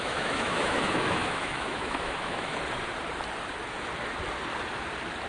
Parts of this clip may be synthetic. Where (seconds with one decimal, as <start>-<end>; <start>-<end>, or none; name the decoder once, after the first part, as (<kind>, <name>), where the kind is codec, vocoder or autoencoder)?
0.0-2.5 (autoencoder, DAC-VAE)

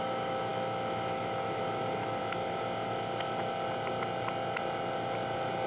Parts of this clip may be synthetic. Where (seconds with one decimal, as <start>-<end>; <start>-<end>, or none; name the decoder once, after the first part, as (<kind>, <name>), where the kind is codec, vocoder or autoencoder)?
0.0-2.2 (autoencoder, DAC-VAE)

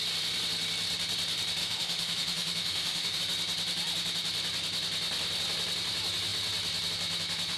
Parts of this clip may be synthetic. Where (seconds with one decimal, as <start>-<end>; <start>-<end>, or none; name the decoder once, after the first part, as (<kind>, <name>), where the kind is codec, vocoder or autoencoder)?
1.6-3.2 (autoencoder, DAC-VAE)

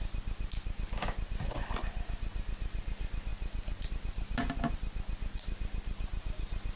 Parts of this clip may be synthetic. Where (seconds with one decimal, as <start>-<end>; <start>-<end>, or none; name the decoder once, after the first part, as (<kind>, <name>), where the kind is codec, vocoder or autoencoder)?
none

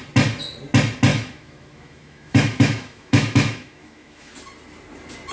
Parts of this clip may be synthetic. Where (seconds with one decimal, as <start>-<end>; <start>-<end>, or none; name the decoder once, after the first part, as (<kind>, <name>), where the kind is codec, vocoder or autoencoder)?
1.1-4.3 (autoencoder, DAC-VAE)